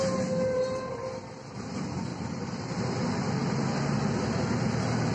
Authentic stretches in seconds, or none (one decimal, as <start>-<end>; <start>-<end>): 0.0-2.1; 2.8-5.1